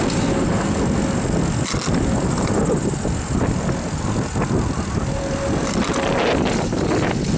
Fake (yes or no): no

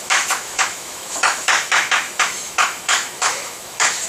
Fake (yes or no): yes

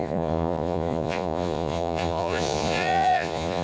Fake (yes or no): yes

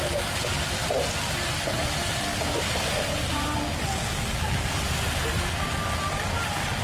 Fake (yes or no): no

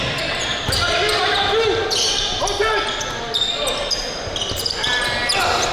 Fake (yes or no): no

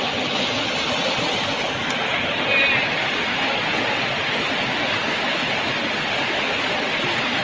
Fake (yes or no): no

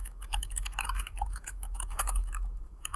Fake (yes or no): yes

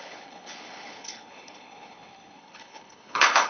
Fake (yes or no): yes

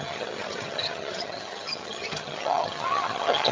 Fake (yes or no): yes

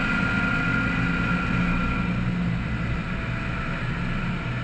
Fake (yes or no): no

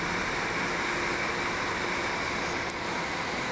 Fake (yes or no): no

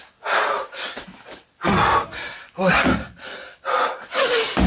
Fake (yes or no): no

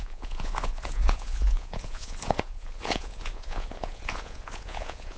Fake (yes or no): yes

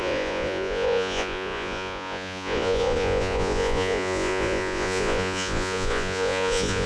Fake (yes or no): yes